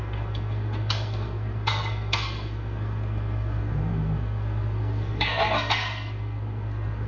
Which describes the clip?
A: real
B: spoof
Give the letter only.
B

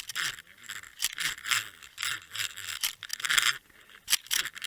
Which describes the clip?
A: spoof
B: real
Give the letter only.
B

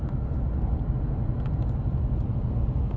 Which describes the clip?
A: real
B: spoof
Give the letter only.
A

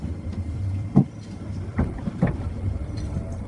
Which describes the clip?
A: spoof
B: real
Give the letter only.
A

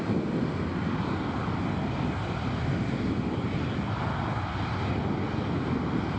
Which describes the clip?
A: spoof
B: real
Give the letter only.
B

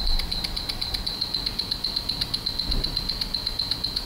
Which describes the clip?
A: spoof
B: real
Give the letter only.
B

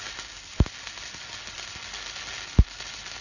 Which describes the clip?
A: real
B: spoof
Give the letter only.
A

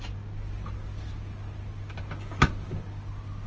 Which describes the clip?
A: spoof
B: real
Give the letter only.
B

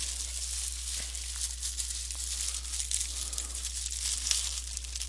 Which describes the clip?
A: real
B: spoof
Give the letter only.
A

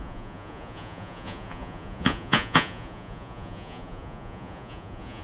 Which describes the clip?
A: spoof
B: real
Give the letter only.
A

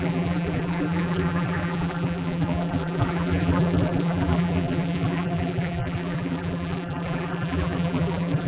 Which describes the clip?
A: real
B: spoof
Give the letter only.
B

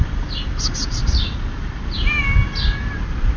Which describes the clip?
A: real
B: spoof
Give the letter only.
A